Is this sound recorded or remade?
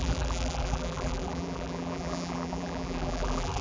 remade